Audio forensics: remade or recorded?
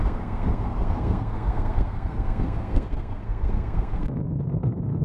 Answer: remade